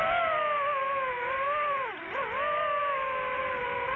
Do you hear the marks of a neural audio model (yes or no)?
no